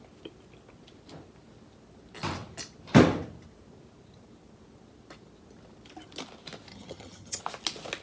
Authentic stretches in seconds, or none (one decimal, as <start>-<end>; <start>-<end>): 0.0-6.7; 7.4-8.0